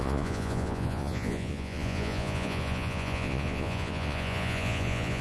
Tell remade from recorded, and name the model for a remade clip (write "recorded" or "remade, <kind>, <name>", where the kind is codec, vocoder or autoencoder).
remade, vocoder, Vocos